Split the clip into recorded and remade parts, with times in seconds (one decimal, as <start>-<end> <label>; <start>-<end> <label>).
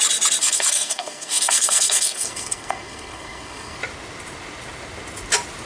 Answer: 0.0-0.4 recorded; 0.4-3.8 remade; 3.8-5.7 recorded